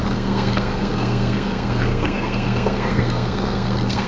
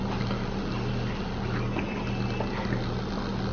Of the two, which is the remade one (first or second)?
first